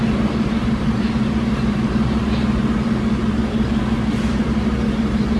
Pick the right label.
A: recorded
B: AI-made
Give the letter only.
A